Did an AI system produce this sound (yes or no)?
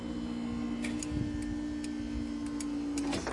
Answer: no